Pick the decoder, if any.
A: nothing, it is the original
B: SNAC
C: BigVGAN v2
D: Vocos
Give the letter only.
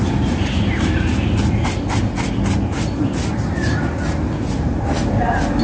A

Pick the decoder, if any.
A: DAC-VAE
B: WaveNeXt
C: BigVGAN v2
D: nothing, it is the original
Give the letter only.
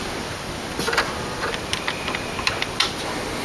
C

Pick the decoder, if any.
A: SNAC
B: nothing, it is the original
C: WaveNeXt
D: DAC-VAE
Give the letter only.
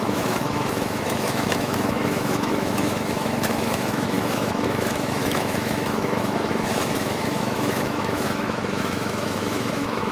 D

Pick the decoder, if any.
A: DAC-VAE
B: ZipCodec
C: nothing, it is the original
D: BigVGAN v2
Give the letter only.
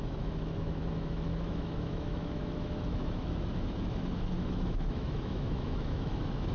A